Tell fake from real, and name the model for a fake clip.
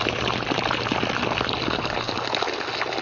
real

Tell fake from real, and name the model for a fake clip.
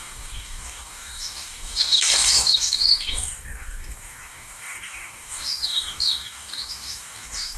fake, codec, DAC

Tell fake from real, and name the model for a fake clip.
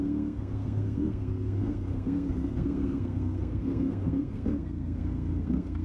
fake, codec, SNAC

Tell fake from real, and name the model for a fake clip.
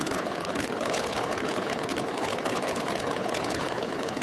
fake, codec, HILCodec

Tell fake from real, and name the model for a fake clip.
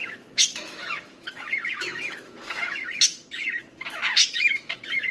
fake, autoencoder, DAC-VAE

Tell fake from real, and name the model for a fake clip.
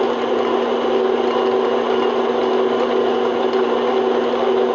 real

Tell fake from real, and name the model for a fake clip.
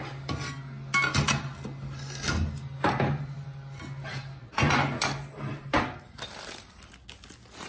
real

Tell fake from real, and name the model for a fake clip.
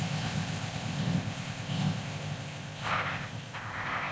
fake, codec, ZipCodec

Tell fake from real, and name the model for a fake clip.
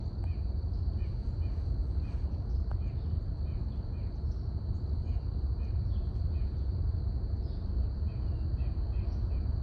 fake, vocoder, Vocos